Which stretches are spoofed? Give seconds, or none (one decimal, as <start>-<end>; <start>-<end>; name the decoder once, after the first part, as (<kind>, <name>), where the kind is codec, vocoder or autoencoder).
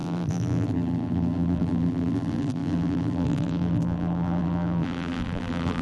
0.0-5.8 (vocoder, BigVGAN v2)